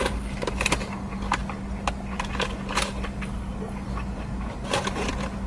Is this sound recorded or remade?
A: recorded